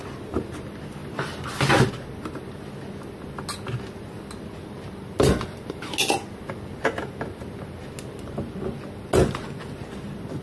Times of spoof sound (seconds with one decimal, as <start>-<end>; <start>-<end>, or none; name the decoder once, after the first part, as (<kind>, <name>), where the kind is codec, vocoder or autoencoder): 1.0-1.5 (vocoder, BigVGAN v2); 4.6-5.9